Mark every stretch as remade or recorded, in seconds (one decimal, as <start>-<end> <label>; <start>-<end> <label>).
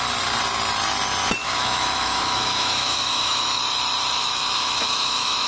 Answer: 0.0-1.4 recorded; 1.4-3.6 remade; 3.6-4.2 recorded; 4.2-5.5 remade